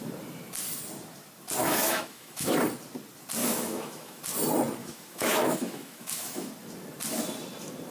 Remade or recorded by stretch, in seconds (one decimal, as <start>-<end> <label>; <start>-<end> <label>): 0.0-1.6 recorded; 1.6-2.5 remade; 2.5-3.4 recorded; 3.4-4.2 remade; 4.2-4.8 recorded; 4.8-6.5 remade; 6.5-7.9 recorded